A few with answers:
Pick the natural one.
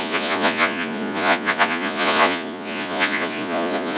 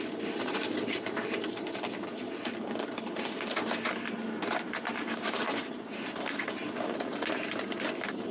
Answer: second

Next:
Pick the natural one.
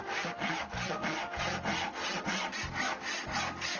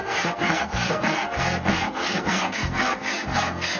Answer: first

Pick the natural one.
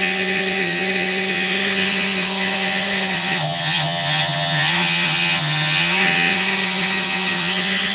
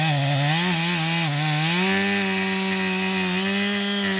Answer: second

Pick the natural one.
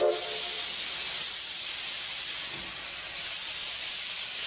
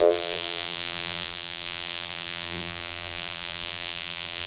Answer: first